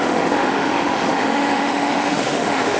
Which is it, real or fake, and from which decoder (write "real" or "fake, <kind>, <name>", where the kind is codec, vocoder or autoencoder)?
fake, autoencoder, DAC-VAE